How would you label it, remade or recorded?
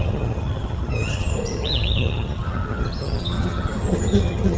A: remade